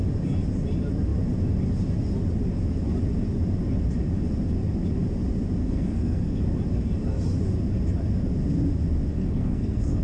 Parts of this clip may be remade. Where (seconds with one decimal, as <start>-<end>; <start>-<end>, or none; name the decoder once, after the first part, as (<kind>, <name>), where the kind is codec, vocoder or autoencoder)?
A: 5.6-6.4 (codec, SNAC); 9.1-10.0